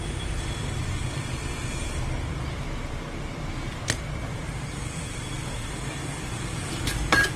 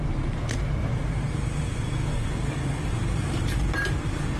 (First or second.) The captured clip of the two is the second